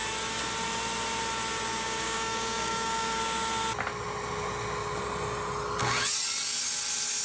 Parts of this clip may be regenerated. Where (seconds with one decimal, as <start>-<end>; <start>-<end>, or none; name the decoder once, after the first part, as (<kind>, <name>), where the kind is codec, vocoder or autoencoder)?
1.7-3.2 (codec, DAC)

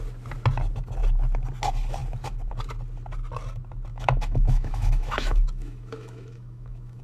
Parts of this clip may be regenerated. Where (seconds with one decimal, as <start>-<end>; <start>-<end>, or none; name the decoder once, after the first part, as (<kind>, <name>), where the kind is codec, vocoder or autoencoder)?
3.9-7.0 (autoencoder, DAC-VAE)

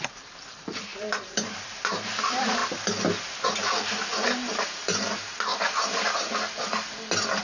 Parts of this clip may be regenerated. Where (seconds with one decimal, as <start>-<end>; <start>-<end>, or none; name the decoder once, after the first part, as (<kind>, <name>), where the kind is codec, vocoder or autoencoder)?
0.0-2.6 (vocoder, BigVGAN v2); 3.7-5.5